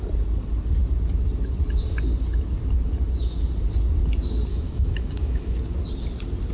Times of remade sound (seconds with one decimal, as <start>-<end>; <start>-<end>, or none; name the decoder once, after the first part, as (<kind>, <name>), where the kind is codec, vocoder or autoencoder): 4.5-5.6 (autoencoder, DAC-VAE)